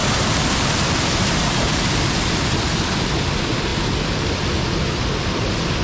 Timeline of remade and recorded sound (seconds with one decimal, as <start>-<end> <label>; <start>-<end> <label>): 0.0-2.2 remade; 2.2-3.7 recorded; 3.7-4.2 remade; 4.2-5.8 recorded

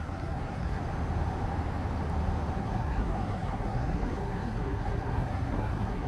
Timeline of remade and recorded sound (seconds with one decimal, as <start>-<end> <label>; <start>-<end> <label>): 0.0-0.8 remade; 0.8-2.6 recorded; 2.6-6.1 remade

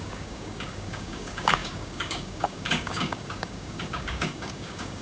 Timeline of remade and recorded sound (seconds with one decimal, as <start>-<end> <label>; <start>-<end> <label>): 0.0-5.0 remade

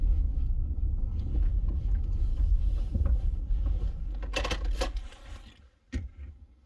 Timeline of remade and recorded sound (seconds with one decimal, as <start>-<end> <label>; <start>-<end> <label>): 0.0-1.3 remade; 1.3-1.8 recorded; 1.8-2.3 remade; 2.3-6.3 recorded; 6.3-6.7 remade

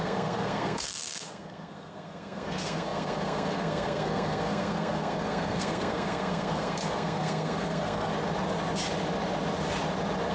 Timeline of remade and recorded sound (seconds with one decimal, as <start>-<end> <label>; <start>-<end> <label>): 0.0-8.1 remade; 8.1-10.3 recorded